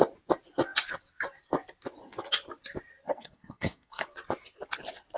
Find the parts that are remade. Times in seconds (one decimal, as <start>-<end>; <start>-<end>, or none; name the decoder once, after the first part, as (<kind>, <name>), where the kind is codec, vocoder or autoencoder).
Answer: 3.1-4.1 (codec, SNAC)